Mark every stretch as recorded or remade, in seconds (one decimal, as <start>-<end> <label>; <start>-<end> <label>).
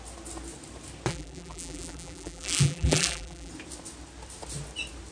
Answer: 0.0-1.1 recorded; 1.1-3.5 remade; 3.5-5.1 recorded